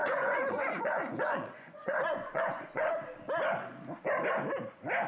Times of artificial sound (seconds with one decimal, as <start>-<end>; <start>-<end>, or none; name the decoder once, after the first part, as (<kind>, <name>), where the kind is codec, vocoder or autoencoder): 0.0-2.9 (vocoder, Vocos)